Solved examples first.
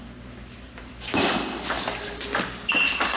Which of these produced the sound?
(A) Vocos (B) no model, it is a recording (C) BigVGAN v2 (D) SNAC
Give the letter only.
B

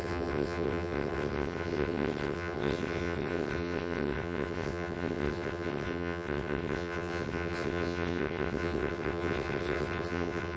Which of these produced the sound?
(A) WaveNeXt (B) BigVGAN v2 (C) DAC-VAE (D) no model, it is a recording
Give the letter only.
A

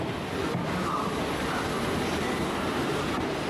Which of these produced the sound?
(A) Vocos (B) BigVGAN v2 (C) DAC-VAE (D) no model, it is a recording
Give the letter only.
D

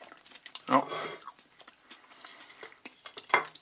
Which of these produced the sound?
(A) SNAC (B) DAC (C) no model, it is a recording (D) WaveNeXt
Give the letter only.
C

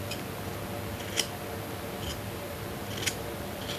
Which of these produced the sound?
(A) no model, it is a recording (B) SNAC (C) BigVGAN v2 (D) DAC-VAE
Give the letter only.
A